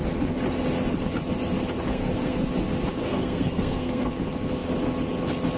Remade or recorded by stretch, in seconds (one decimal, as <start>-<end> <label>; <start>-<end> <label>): 0.0-1.9 recorded; 1.9-2.5 remade; 2.5-3.0 recorded; 3.0-4.1 remade; 4.1-5.6 recorded